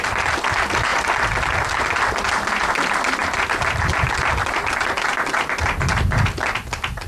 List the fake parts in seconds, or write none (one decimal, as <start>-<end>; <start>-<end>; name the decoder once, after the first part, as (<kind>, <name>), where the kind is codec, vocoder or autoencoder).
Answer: none